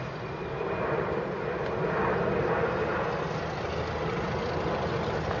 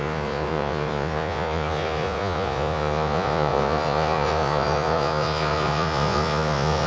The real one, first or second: first